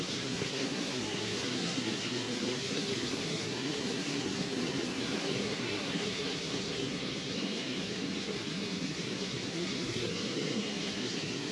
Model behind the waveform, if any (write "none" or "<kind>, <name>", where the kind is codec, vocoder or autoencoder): codec, SNAC